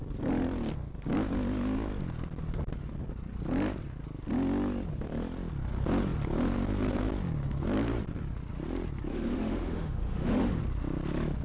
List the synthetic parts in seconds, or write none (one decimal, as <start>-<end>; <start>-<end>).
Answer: 9.1-10.6